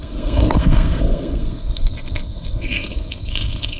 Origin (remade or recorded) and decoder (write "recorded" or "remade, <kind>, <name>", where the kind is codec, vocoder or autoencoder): remade, codec, SNAC